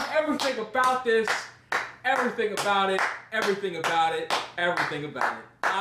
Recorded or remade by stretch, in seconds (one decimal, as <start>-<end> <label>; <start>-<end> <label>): 0.0-1.0 remade; 1.0-5.8 recorded